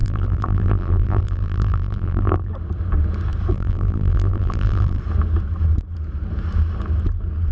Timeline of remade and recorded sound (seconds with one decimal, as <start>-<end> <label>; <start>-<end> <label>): 0.0-2.5 remade; 2.5-3.5 recorded; 3.5-5.0 remade; 5.0-7.5 recorded